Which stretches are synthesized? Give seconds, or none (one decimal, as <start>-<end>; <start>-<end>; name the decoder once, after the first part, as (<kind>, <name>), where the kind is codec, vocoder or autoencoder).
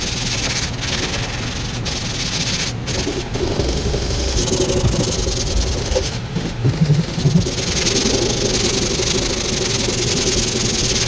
3.1-4.4 (autoencoder, DAC-VAE); 5.8-7.2